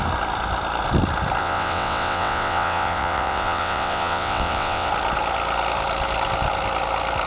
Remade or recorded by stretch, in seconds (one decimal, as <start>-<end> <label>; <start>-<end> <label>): 0.0-1.4 recorded; 1.4-4.9 remade; 4.9-7.3 recorded